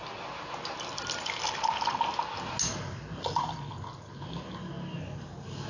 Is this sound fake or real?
real